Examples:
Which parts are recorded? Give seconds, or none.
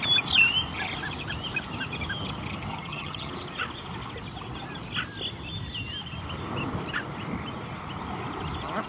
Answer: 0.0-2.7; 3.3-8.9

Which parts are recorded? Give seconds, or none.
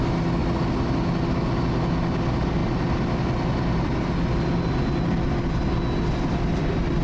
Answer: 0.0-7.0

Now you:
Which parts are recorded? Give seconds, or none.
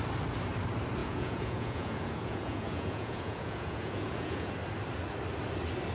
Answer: 0.0-1.0; 4.5-5.9